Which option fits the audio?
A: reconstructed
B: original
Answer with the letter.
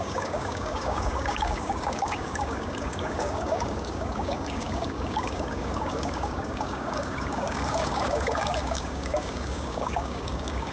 A